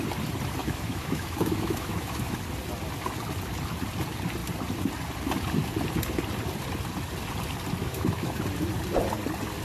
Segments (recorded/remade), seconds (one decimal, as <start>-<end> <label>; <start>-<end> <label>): 0.0-0.6 recorded; 0.6-2.4 remade; 2.4-7.8 recorded; 7.8-8.4 remade; 8.4-9.6 recorded